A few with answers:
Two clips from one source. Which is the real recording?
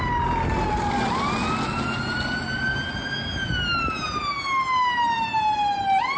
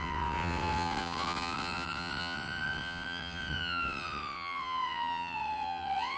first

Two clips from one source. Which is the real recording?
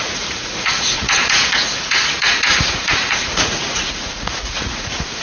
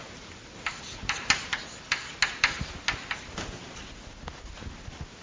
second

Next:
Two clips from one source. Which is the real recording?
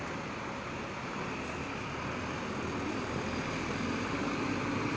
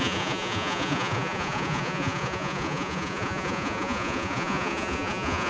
first